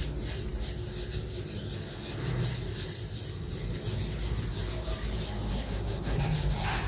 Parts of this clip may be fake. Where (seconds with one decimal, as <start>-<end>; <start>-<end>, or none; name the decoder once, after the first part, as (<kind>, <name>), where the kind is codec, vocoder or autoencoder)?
5.5-6.2 (codec, SNAC)